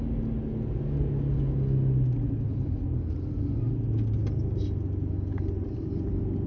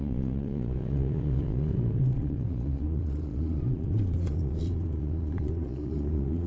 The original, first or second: first